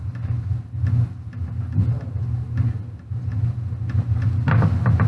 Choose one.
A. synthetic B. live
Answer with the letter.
B